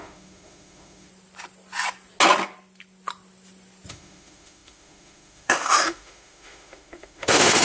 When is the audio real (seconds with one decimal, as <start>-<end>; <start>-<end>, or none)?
1.1-3.9